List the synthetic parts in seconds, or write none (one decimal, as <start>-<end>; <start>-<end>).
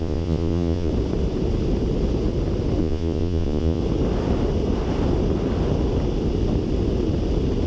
0.0-0.9; 2.8-3.8